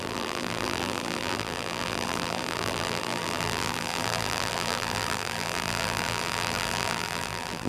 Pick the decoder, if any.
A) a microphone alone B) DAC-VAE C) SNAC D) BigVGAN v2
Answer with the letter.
D